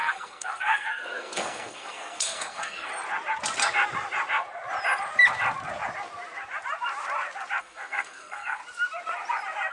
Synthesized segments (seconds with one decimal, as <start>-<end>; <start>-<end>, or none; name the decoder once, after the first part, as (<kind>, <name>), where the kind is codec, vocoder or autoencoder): 0.0-2.9 (codec, SNAC); 7.6-8.6